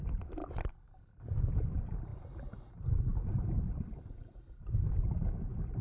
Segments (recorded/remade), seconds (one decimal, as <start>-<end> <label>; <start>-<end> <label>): 0.0-0.4 recorded; 0.4-1.1 remade; 1.1-2.1 recorded; 2.1-2.6 remade; 2.6-3.1 recorded; 3.1-5.1 remade; 5.1-5.8 recorded